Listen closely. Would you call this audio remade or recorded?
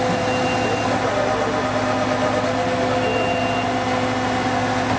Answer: recorded